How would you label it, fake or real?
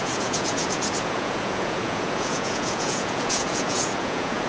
fake